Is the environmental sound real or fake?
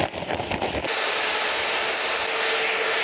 real